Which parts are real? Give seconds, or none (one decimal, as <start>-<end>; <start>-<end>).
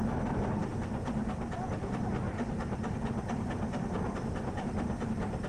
0.0-5.5